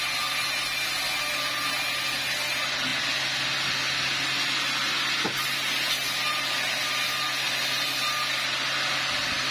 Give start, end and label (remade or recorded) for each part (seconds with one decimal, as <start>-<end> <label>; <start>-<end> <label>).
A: 0.0-9.5 recorded